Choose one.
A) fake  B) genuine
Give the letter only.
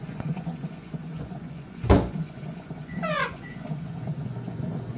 A